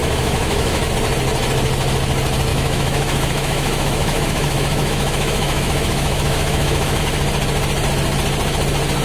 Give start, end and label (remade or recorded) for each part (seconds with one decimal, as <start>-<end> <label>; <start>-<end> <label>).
0.0-0.9 remade; 0.9-2.5 recorded; 2.5-7.0 remade; 7.0-9.0 recorded